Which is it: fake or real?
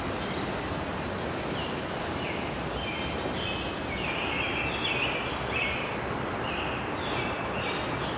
real